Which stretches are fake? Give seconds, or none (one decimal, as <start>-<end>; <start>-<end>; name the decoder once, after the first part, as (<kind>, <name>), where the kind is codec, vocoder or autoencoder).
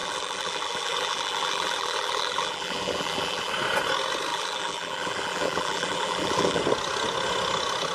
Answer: 0.0-3.5 (vocoder, BigVGAN v2); 4.3-6.6